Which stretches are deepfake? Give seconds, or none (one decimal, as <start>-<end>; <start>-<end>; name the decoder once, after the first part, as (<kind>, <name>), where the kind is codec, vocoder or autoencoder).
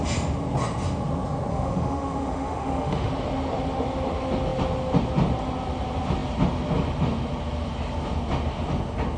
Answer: 1.5-3.1 (autoencoder, DAC-VAE)